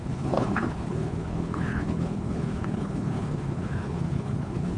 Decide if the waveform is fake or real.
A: fake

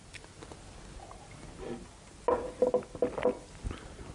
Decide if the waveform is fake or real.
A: real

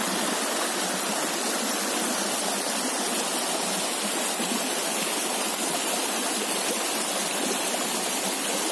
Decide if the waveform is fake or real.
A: real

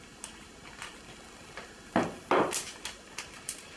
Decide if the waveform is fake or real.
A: real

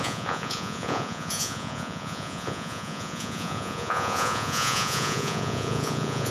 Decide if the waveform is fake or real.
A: fake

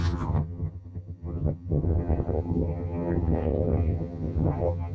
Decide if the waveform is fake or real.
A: fake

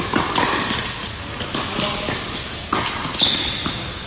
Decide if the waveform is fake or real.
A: real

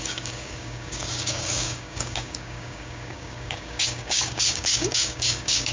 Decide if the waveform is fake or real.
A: fake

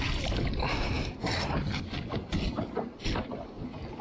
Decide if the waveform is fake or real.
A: real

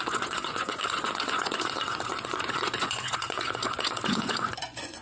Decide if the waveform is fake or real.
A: fake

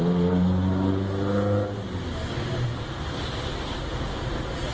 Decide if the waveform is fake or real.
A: real